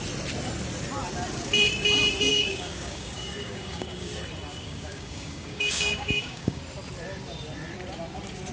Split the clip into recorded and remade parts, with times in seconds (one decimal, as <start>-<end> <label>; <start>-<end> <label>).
0.0-2.3 recorded; 2.3-4.1 remade; 4.1-4.5 recorded; 4.5-6.6 remade; 6.6-8.5 recorded